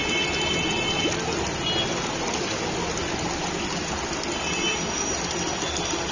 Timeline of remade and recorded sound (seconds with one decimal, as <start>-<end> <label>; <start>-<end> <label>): 0.0-6.1 recorded